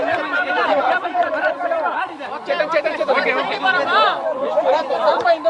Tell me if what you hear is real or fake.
fake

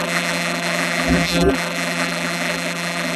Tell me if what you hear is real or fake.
fake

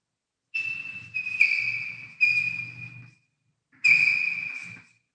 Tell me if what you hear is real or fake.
real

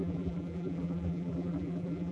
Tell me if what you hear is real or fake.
fake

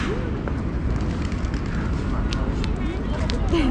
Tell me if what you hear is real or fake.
real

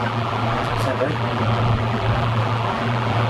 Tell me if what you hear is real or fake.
fake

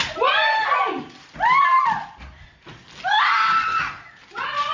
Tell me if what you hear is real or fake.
real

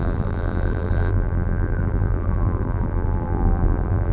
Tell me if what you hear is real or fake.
fake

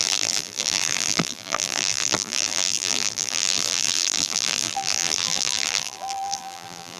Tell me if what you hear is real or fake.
fake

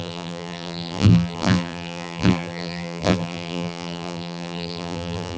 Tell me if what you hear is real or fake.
fake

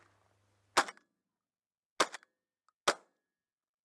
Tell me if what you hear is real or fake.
real